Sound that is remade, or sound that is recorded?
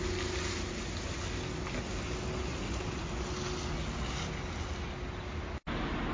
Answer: recorded